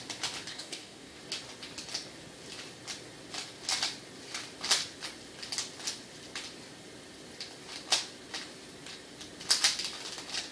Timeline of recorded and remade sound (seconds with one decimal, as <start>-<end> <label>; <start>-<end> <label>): 0.0-0.5 recorded; 0.5-1.2 remade; 1.2-10.5 recorded